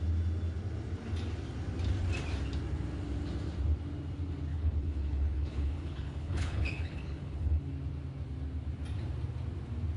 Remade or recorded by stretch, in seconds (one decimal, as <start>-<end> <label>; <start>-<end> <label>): 0.0-4.5 recorded; 4.5-7.7 remade; 7.7-10.0 recorded